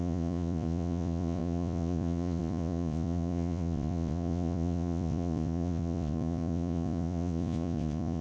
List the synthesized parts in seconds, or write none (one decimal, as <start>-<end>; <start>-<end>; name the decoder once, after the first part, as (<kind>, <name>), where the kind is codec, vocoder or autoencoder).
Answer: 0.0-8.2 (vocoder, Vocos)